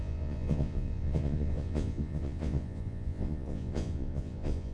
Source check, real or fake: fake